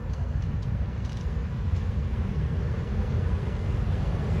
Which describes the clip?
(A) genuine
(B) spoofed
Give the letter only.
B